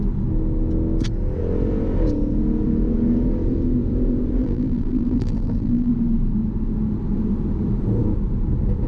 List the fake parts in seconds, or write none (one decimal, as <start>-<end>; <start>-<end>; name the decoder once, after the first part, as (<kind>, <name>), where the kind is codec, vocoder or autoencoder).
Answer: 4.4-5.9 (vocoder, BigVGAN v2)